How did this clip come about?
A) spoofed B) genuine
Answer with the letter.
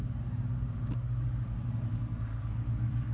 B